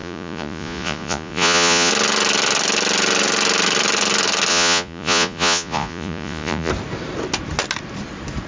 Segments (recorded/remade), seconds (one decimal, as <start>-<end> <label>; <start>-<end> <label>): 0.0-1.9 remade; 1.9-4.5 recorded; 4.5-6.7 remade; 6.7-8.5 recorded